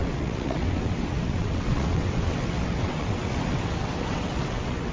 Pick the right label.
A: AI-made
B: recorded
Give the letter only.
A